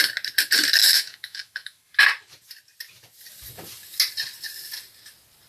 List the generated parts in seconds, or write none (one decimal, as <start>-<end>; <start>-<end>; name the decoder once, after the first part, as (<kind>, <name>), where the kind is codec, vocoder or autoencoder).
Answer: 0.8-2.0 (autoencoder, DAC-VAE)